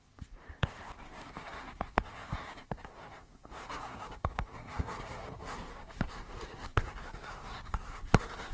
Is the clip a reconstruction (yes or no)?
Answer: yes